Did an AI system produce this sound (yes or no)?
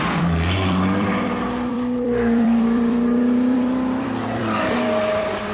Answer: yes